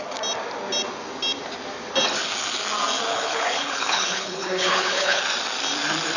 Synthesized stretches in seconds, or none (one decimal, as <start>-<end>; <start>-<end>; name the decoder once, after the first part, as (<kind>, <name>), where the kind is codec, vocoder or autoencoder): 3.1-5.2 (codec, HILCodec)

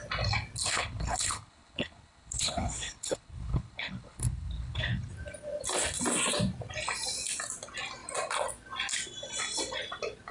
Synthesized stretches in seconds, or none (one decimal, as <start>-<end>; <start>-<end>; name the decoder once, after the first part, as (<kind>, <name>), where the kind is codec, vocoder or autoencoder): 0.6-5.1 (codec, HILCodec)